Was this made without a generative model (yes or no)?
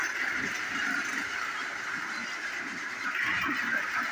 no